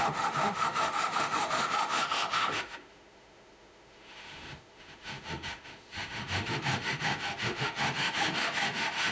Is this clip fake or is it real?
fake